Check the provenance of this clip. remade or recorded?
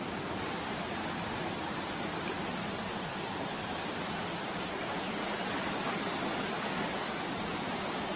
recorded